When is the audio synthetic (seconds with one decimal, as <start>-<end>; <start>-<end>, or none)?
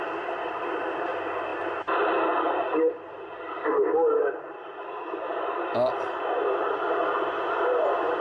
none